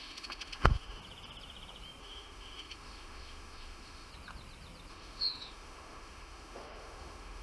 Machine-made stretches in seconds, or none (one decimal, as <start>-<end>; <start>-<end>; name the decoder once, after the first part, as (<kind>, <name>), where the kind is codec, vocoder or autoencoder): 0.0-1.0 (autoencoder, DAC-VAE); 2.0-4.1; 4.9-7.4